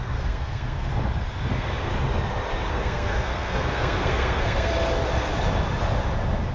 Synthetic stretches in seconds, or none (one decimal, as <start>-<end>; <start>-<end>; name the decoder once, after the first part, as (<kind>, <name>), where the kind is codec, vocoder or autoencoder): 0.0-0.9 (codec, SNAC); 1.5-1.9; 2.7-4.7